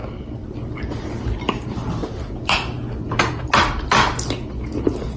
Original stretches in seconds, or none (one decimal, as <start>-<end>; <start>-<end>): 0.0-5.2